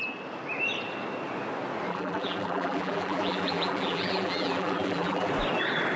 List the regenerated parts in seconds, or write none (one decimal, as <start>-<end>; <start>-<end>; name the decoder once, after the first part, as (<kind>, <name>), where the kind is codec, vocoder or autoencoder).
1.9-5.3 (vocoder, BigVGAN v2)